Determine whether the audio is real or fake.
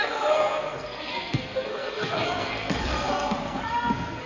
fake